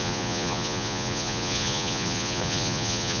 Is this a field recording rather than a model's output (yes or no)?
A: no